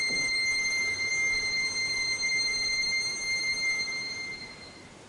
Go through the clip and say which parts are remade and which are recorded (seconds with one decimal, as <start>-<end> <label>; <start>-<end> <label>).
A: 0.0-3.1 recorded; 3.1-5.1 remade